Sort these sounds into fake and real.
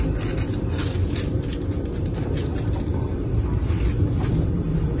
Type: real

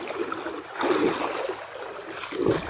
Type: real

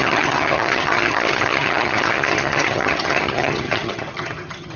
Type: fake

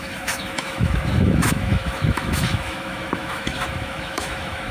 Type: fake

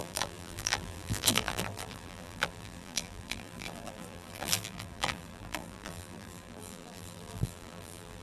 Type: fake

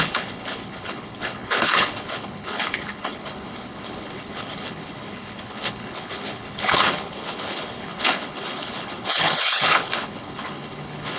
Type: fake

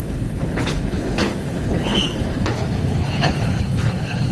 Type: fake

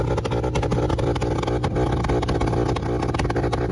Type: real